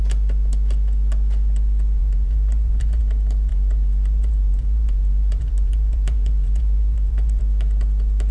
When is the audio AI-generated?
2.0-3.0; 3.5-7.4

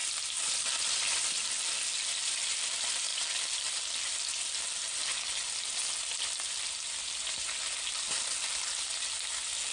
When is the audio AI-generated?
0.0-1.2

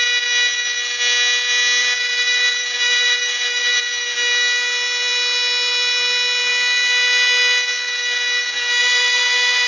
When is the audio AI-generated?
1.8-3.8; 8.8-9.7

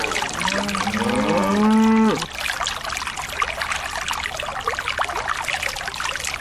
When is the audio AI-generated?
none

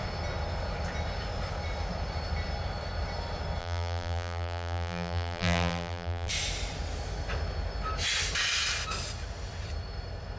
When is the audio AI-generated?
3.6-6.3

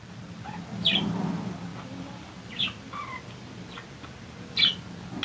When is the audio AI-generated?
1.7-3.7